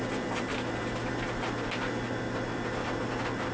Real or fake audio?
real